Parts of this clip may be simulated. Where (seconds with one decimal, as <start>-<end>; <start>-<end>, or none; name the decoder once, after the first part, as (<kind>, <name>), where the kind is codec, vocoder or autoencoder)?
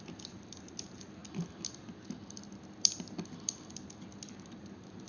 0.0-1.2 (vocoder, BigVGAN v2); 4.3-5.1